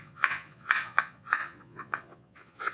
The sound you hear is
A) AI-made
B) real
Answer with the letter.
A